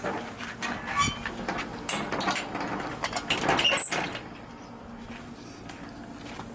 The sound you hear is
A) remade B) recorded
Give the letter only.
B